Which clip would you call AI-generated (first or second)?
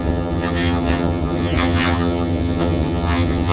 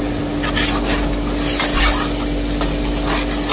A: first